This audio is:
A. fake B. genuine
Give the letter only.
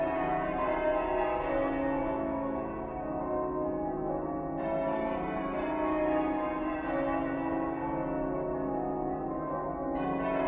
B